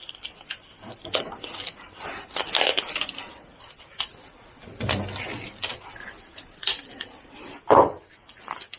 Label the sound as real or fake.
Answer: real